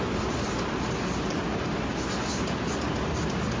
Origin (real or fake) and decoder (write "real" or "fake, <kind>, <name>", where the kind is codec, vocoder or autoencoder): real